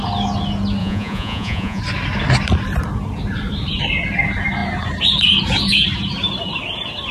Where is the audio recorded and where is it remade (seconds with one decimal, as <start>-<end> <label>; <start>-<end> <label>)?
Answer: 0.0-0.8 recorded; 0.8-1.8 remade; 1.8-7.1 recorded